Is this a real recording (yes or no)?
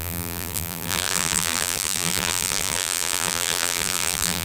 no